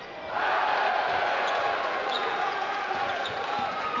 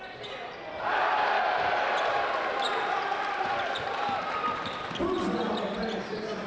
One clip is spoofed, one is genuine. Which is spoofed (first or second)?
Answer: first